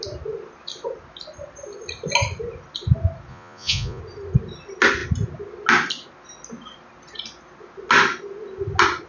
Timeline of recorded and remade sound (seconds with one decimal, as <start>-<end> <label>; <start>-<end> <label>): 0.0-3.3 recorded; 3.3-4.0 remade; 4.0-9.1 recorded